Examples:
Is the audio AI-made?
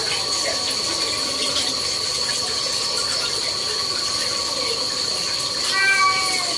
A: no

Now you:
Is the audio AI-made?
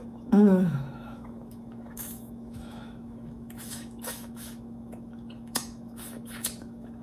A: yes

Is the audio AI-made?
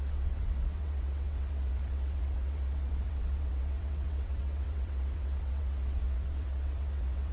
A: yes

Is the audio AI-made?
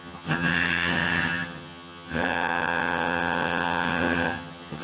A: yes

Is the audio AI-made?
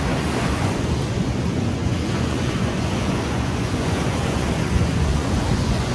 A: yes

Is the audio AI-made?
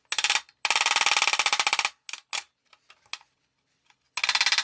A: no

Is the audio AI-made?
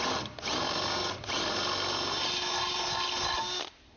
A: no